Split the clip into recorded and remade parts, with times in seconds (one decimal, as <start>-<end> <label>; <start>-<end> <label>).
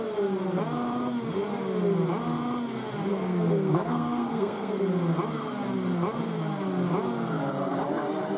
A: 0.0-3.1 recorded; 3.1-4.8 remade; 4.8-8.4 recorded